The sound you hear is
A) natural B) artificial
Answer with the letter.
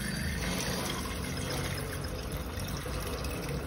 A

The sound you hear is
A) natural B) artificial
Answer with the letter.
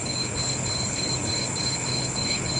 B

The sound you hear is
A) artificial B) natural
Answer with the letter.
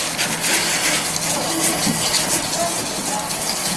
B